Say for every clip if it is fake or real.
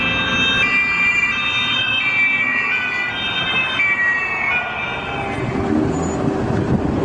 real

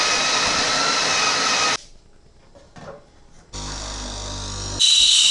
real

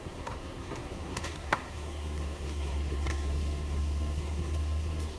fake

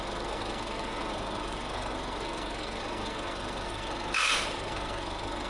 fake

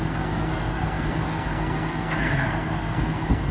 fake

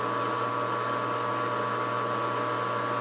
real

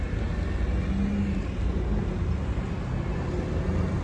real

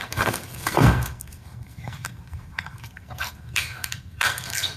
fake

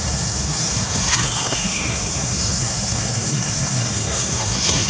fake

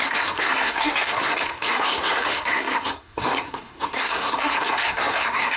fake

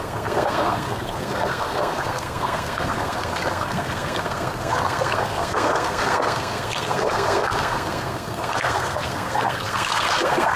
fake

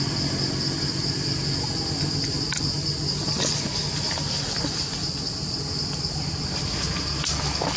real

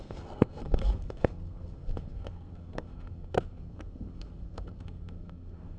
fake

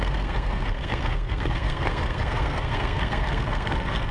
fake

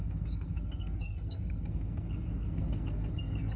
fake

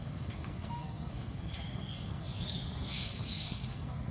fake